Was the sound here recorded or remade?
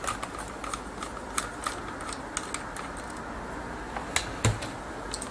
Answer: recorded